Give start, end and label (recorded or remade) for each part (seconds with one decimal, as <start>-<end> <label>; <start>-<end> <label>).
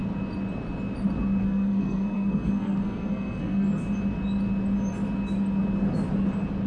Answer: 0.0-1.4 recorded; 1.4-3.7 remade; 3.7-6.7 recorded